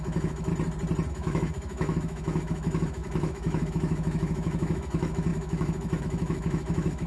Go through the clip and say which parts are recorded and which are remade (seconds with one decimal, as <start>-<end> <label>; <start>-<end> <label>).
0.0-0.5 remade; 0.5-1.1 recorded; 1.1-7.1 remade